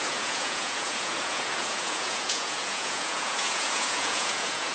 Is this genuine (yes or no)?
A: no